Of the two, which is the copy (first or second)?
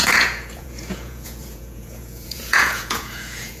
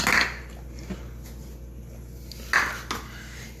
first